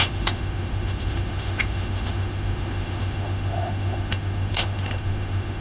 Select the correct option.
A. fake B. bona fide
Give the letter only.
A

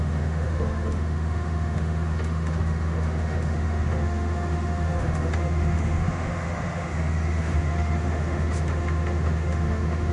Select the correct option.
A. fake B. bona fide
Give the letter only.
A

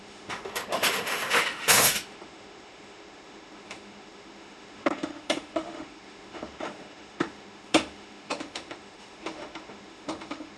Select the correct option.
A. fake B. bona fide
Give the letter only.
A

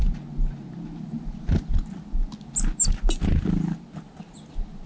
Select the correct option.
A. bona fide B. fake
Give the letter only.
A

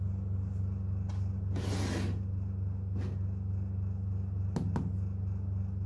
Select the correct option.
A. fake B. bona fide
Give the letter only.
B